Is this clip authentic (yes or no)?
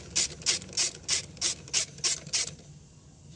yes